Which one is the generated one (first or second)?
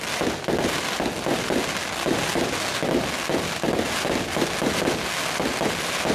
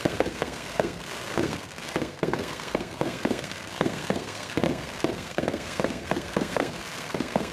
second